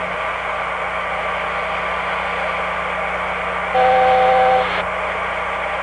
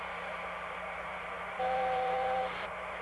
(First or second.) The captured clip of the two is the first